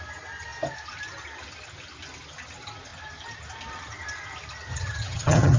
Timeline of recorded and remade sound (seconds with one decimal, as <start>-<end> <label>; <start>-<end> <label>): 0.0-4.7 recorded; 4.7-5.6 remade